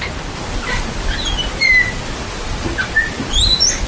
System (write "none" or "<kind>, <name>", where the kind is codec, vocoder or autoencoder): none